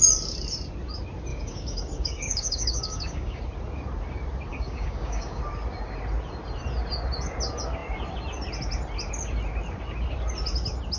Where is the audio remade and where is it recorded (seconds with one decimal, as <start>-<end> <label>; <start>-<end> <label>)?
0.0-1.3 recorded; 1.3-3.4 remade; 3.4-4.5 recorded; 4.5-5.4 remade; 5.4-11.0 recorded